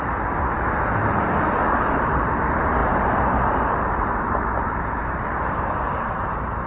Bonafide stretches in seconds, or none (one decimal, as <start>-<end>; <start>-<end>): 0.0-1.0; 1.6-2.8; 6.3-6.7